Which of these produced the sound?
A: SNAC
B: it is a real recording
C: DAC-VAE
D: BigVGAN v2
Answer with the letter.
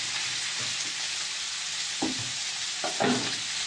B